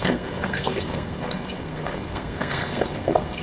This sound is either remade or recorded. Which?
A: remade